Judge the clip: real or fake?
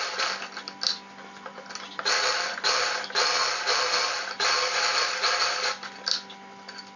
real